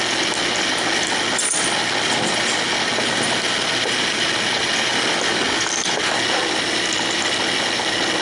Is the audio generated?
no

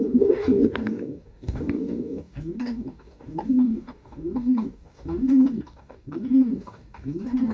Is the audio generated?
yes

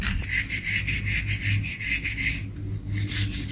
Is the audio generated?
no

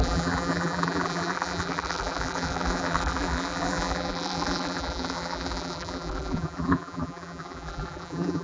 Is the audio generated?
yes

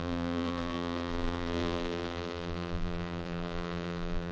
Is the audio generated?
yes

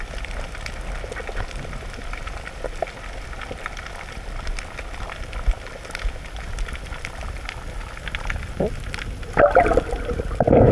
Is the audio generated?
no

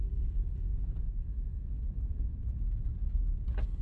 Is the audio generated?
no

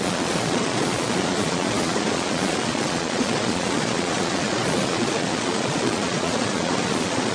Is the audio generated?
yes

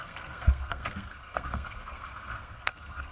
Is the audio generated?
yes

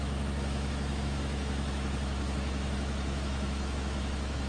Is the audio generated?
yes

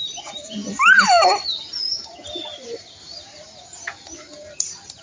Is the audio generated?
no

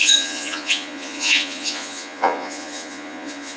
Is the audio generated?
yes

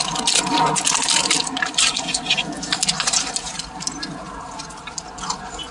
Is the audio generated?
no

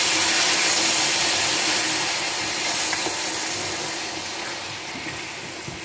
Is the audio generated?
no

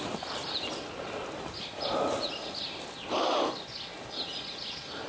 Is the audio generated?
no